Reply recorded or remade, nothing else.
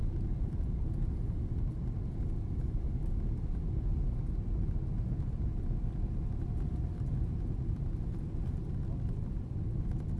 recorded